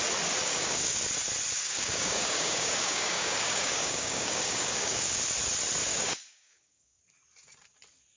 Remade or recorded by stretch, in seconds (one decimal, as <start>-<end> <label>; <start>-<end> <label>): 0.0-0.4 recorded; 0.4-1.1 remade; 1.1-1.5 recorded; 1.5-5.2 remade; 5.2-5.9 recorded; 5.9-7.0 remade; 7.0-8.2 recorded